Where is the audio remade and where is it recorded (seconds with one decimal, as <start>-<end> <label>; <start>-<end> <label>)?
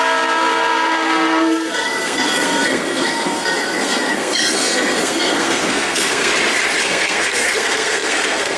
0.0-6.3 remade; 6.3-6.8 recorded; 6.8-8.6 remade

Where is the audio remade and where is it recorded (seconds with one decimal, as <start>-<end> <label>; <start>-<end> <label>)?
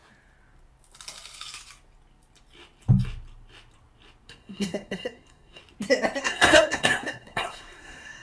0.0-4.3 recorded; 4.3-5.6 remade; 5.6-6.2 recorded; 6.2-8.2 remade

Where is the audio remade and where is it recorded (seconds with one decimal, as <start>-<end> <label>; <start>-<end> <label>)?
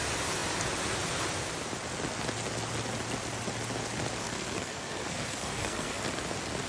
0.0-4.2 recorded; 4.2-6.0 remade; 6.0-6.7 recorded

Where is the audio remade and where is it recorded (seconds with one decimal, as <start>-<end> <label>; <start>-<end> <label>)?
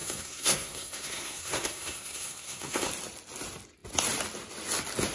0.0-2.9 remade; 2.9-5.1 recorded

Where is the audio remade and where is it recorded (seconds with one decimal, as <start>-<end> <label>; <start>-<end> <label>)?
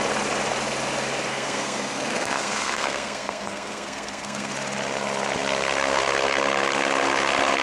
0.0-1.3 recorded; 1.3-4.5 remade; 4.5-7.6 recorded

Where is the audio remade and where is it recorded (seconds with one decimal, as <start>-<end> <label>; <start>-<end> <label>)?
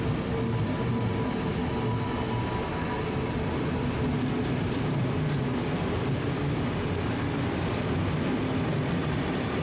0.0-9.6 recorded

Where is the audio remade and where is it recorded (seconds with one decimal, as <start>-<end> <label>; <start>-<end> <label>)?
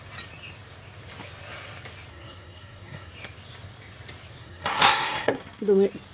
0.0-2.1 recorded; 2.1-3.1 remade; 3.1-4.4 recorded; 4.4-5.4 remade; 5.4-6.1 recorded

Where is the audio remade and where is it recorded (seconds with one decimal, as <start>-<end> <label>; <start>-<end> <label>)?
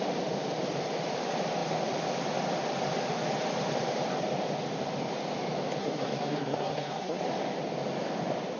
0.0-5.8 recorded; 5.8-7.2 remade; 7.2-8.6 recorded